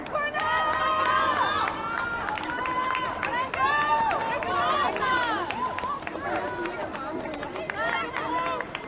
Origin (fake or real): real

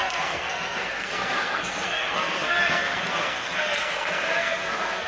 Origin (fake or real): fake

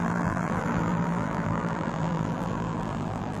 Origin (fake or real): fake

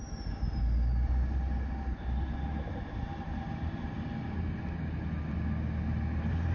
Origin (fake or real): real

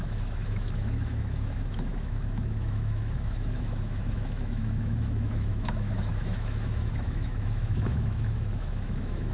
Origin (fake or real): fake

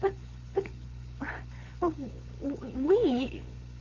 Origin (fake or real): fake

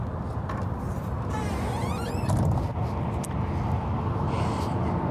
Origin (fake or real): real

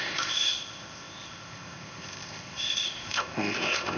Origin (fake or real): fake